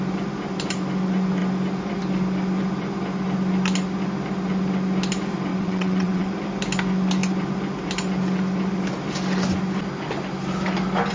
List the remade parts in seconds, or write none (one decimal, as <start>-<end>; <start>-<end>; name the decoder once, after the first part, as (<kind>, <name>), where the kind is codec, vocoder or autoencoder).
5.5-6.3 (vocoder, WaveNeXt)